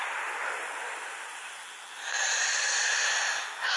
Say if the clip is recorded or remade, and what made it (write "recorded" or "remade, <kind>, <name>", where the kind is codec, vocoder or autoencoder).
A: recorded